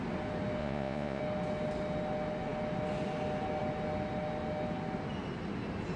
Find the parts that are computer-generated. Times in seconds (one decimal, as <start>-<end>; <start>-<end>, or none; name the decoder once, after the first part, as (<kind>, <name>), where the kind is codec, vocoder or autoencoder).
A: 0.6-1.2 (vocoder, Vocos)